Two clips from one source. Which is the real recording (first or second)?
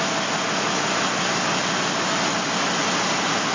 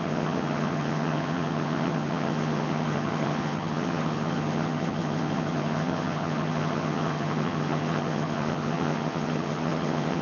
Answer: first